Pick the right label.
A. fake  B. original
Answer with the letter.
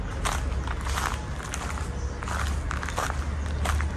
B